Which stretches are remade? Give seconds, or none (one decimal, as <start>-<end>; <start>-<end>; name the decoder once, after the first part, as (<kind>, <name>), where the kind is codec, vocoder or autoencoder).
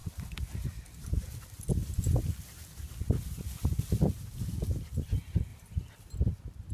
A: 0.0-1.7 (vocoder, BigVGAN v2); 4.4-5.5; 6.3-6.7